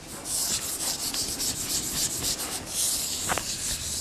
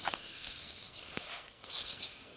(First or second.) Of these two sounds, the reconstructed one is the second